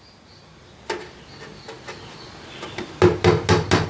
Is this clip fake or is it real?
real